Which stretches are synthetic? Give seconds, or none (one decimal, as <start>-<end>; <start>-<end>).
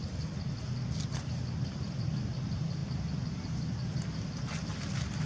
none